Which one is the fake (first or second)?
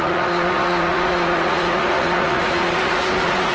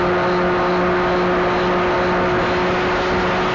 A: first